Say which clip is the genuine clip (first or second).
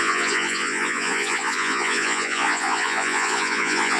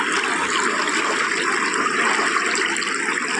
second